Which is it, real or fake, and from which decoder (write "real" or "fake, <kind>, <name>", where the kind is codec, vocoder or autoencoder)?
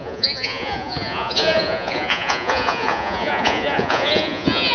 fake, vocoder, Vocos